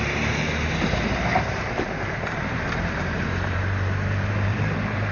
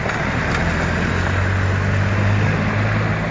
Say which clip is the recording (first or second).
second